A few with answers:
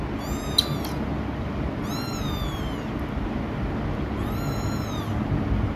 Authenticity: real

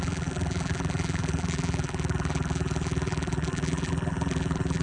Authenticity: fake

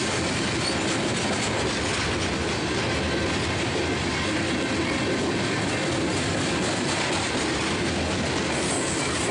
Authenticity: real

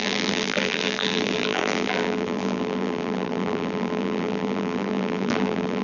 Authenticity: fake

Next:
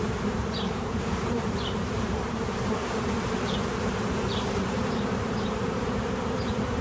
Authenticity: fake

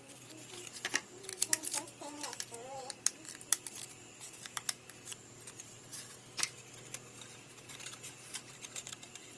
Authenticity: fake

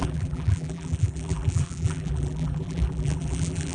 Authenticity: fake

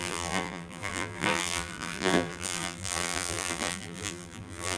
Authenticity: fake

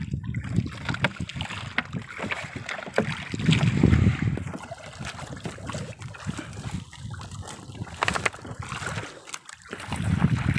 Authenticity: real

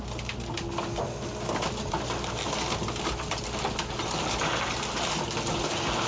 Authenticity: real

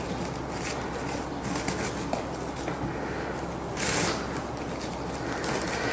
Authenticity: real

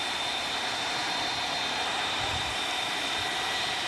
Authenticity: fake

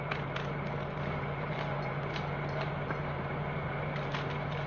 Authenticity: fake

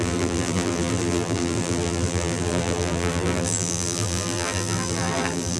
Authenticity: fake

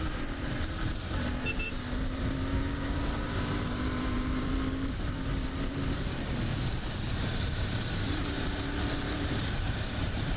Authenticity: fake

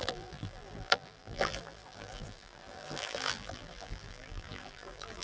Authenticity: fake